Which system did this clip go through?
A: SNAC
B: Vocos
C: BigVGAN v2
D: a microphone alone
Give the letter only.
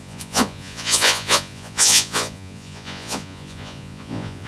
B